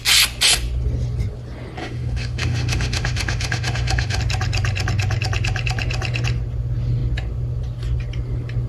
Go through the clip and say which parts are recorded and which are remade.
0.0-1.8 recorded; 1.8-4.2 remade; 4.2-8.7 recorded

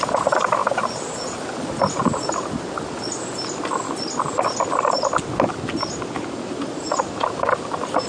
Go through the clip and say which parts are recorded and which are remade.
0.0-8.1 recorded

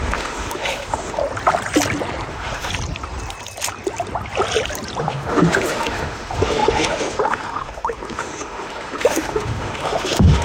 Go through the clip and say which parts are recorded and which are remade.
0.0-1.2 remade; 1.2-2.3 recorded; 2.3-2.7 remade; 2.7-5.0 recorded; 5.0-10.4 remade

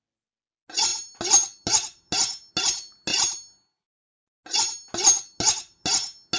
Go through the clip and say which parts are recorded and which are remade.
0.0-6.4 recorded

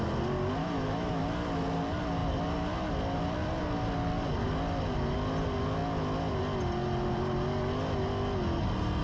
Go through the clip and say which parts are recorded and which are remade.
0.0-0.6 recorded; 0.6-1.2 remade; 1.2-9.0 recorded

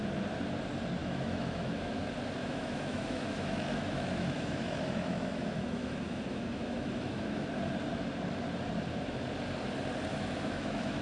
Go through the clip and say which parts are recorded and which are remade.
0.0-1.0 recorded; 1.0-2.0 remade; 2.0-2.4 recorded; 2.4-7.5 remade; 7.5-10.1 recorded; 10.1-11.0 remade

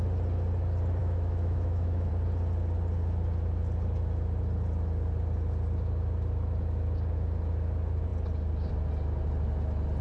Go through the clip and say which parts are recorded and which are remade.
0.0-1.0 recorded; 1.0-2.1 remade; 2.1-10.0 recorded

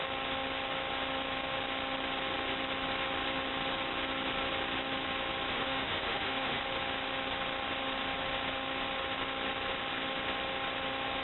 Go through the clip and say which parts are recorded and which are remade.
0.0-5.5 recorded; 5.5-6.6 remade; 6.6-11.2 recorded